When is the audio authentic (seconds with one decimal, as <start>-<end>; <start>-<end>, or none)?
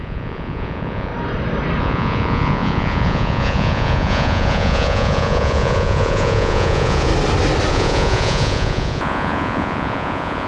1.1-1.8; 7.1-7.7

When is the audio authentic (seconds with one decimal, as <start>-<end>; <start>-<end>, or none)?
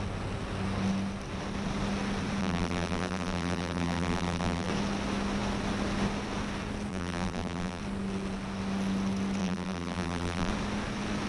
0.0-2.4; 4.7-6.9; 7.8-9.4; 10.5-11.3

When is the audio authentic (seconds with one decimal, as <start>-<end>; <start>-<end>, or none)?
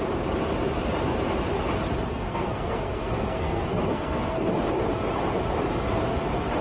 0.0-2.1; 4.5-6.6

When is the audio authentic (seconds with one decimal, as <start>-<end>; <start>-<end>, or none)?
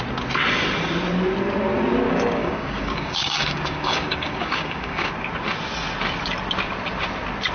0.0-2.4; 5.1-7.5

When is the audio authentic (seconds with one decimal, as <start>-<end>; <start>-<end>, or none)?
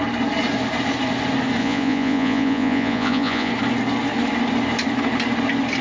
0.0-1.6; 3.5-5.8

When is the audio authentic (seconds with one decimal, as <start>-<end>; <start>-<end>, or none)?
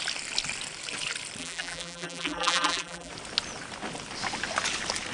0.0-1.4; 3.1-5.1